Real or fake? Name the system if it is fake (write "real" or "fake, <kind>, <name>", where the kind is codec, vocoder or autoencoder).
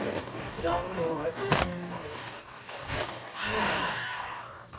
fake, codec, DAC